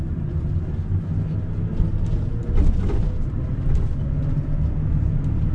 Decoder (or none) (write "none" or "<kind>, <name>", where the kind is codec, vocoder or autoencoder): none